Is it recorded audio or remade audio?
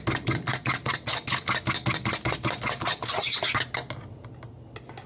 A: recorded